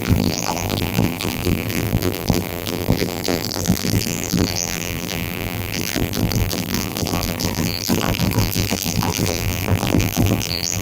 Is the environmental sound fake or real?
fake